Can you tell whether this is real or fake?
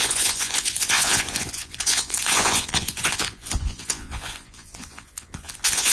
fake